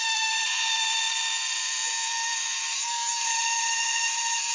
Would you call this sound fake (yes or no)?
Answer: yes